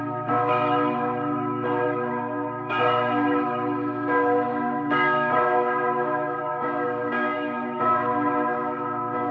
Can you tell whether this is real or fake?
fake